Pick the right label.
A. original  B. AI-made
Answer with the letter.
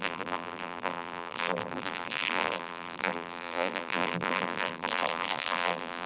B